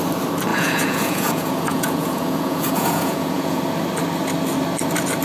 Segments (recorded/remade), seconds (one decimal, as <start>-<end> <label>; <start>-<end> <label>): 0.0-0.5 recorded; 0.5-3.6 remade; 3.6-5.2 recorded